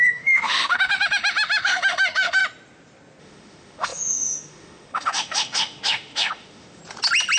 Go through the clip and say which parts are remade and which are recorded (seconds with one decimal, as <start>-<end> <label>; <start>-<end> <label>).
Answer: 0.0-2.4 remade; 2.4-3.2 recorded; 3.2-6.8 remade; 6.8-7.4 recorded